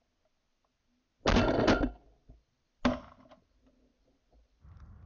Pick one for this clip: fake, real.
real